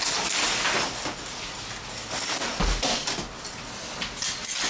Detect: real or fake real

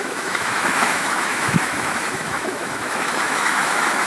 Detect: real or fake fake